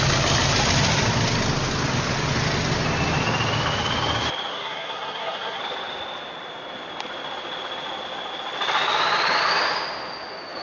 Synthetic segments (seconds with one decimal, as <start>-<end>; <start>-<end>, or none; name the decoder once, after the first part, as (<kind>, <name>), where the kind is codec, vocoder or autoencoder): 4.5-5.6 (codec, SNAC)

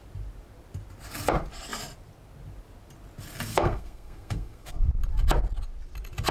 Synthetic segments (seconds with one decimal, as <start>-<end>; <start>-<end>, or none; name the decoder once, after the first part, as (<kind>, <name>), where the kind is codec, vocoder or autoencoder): 3.5-4.8 (codec, SNAC)